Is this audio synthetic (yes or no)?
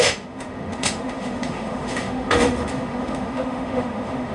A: yes